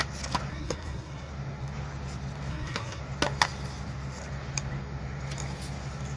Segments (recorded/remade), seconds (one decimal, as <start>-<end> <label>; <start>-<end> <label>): 0.0-0.5 recorded; 0.5-1.3 remade; 1.3-2.5 recorded; 2.5-3.0 remade; 3.0-6.2 recorded